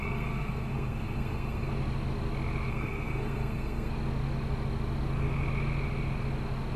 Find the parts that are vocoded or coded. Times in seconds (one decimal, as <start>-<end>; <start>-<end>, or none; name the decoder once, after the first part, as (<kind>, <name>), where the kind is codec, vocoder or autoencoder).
0.0-1.7 (codec, SNAC); 2.7-3.9